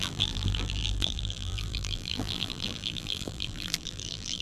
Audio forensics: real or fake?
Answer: fake